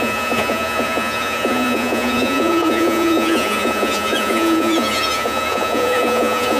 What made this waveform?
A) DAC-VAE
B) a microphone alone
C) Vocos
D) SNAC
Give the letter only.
C